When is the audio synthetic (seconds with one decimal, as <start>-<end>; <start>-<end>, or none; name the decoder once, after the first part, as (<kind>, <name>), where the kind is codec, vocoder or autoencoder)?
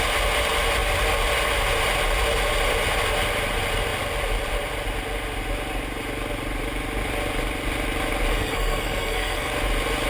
8.3-9.5 (codec, SNAC)